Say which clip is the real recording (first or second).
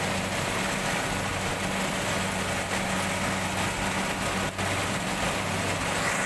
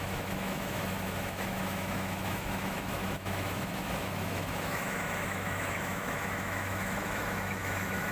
first